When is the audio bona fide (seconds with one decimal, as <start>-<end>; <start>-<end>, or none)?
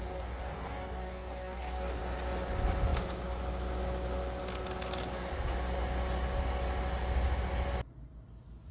2.0-8.7